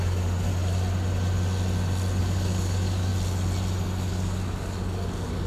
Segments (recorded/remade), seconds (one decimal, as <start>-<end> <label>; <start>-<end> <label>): 0.0-0.5 remade; 0.5-2.2 recorded; 2.2-3.1 remade; 3.1-4.0 recorded; 4.0-5.5 remade

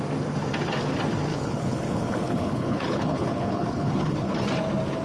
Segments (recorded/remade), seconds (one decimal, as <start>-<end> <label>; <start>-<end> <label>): 0.0-1.3 recorded; 1.3-4.3 remade; 4.3-5.0 recorded

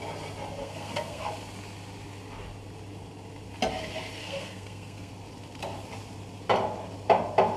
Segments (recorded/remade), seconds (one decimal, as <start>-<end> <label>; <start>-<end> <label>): 0.0-0.6 recorded; 0.6-1.3 remade; 1.3-4.2 recorded; 4.2-5.1 remade; 5.1-7.6 recorded

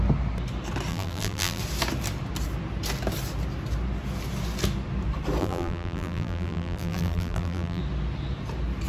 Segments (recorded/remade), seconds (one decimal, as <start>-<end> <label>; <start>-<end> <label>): 0.0-0.9 recorded; 0.9-1.6 remade; 1.6-5.4 recorded; 5.4-7.8 remade; 7.8-8.9 recorded

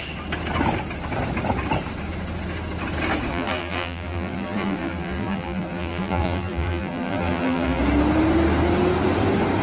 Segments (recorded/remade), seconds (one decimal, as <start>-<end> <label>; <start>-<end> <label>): 0.0-3.3 recorded; 3.3-7.8 remade; 7.8-9.6 recorded

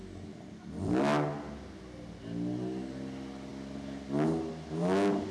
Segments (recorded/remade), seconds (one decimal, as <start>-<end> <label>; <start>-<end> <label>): 0.0-5.3 recorded

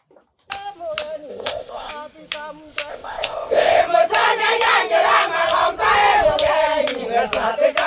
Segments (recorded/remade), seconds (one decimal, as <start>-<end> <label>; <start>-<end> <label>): 0.0-1.3 recorded; 1.3-1.9 remade; 1.9-2.9 recorded; 2.9-3.8 remade; 3.8-7.9 recorded

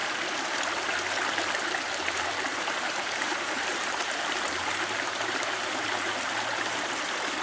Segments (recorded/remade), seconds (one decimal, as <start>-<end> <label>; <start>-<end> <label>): 0.0-2.5 recorded; 2.5-6.9 remade; 6.9-7.4 recorded